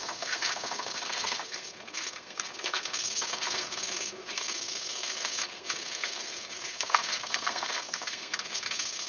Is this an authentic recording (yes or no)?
no